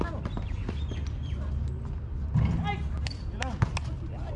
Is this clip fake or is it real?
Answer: real